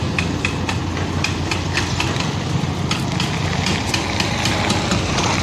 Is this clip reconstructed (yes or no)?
no